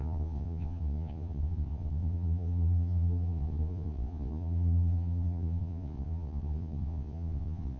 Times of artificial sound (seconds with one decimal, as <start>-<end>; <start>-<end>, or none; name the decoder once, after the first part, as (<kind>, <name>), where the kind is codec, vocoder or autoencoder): 0.0-7.8 (vocoder, Vocos)